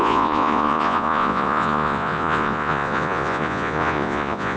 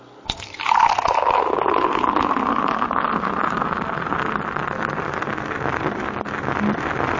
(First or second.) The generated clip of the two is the first